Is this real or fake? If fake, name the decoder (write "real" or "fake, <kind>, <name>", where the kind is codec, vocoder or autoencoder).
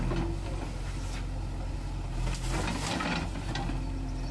real